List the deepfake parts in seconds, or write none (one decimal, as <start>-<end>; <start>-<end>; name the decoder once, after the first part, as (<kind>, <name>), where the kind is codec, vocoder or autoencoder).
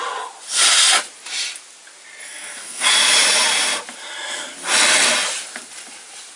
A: 2.2-2.9 (codec, SNAC)